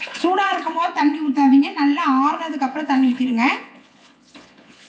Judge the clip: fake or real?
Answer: fake